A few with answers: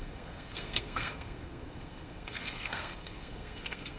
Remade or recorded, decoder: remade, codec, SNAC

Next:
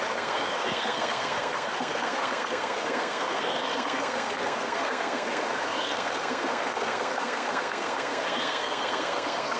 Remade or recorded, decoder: remade, codec, SNAC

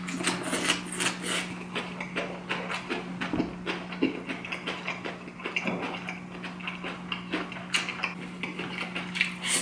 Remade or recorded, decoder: recorded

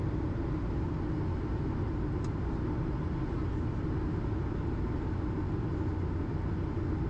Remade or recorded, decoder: recorded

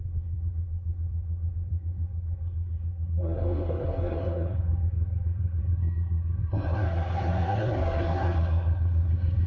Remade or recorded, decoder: remade, codec, SNAC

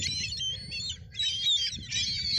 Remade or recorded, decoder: recorded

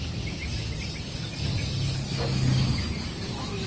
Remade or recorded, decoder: recorded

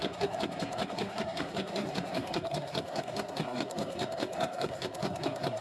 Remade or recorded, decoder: remade, codec, SNAC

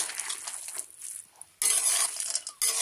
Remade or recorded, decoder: recorded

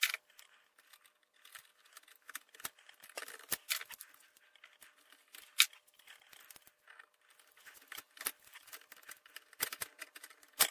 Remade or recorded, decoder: recorded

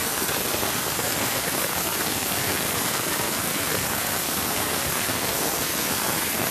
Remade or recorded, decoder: remade, codec, SNAC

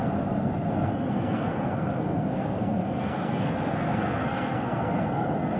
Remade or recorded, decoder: remade, codec, SNAC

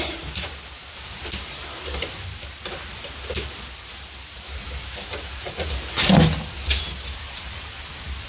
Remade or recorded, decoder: recorded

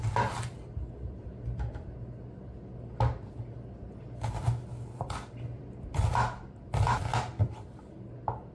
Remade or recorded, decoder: recorded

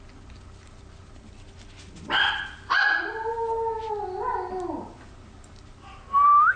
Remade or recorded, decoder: recorded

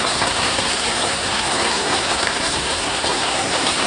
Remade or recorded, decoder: remade, codec, SNAC